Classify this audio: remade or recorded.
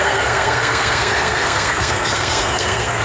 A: remade